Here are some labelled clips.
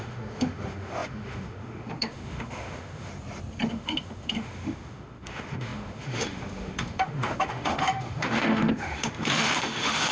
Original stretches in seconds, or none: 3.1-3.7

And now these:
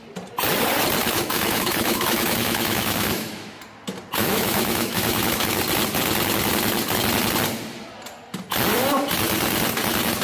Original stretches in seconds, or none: 0.0-1.0; 3.6-4.2; 5.6-10.2